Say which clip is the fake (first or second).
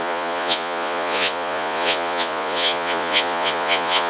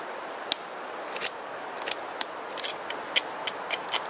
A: first